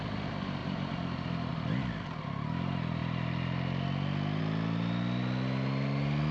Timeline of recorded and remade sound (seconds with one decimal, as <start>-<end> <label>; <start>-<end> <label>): 0.0-0.6 recorded; 0.6-1.5 remade; 1.5-6.3 recorded